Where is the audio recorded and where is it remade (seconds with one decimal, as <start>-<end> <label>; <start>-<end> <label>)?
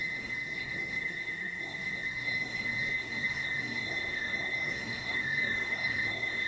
0.0-6.5 remade